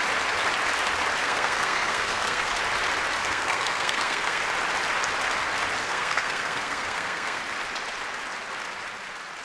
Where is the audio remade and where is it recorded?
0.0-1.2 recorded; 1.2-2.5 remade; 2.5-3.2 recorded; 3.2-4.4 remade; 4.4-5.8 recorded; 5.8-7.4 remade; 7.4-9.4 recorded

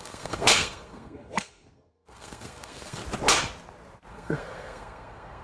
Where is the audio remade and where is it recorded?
0.0-3.0 remade; 3.0-4.1 recorded; 4.1-5.4 remade

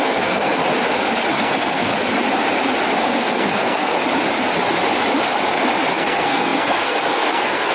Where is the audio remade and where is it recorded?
0.0-0.6 remade; 0.6-1.3 recorded; 1.3-1.9 remade; 1.9-3.0 recorded; 3.0-3.9 remade; 3.9-5.9 recorded; 5.9-7.7 remade

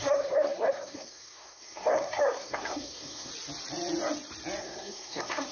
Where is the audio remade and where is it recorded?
0.0-3.3 remade; 3.3-4.6 recorded; 4.6-5.5 remade